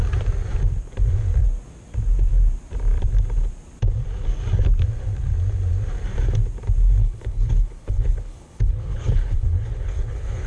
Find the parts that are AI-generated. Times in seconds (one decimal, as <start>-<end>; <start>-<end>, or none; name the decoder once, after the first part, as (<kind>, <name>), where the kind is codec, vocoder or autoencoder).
7.0-10.5 (codec, HILCodec)